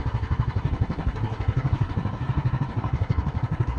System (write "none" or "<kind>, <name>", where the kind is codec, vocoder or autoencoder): codec, SNAC